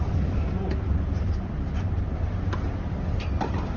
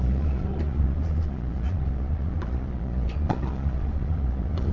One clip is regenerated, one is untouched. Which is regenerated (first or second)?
second